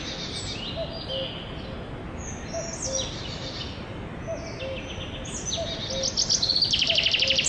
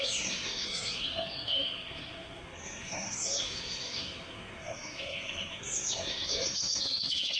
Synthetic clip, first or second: second